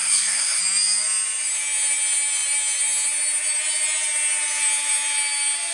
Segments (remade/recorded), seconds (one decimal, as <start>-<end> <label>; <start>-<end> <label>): 0.0-0.6 remade; 0.6-5.7 recorded